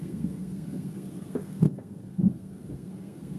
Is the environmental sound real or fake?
fake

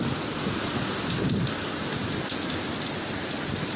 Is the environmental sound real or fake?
real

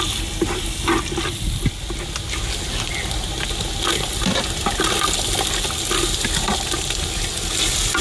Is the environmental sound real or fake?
real